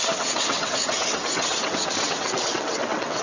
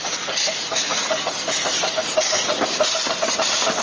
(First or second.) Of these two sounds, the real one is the second